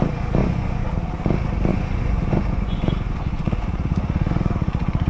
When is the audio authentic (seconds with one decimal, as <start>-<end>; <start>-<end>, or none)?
0.0-0.4; 0.9-1.7